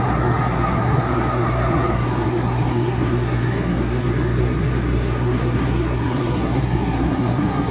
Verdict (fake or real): fake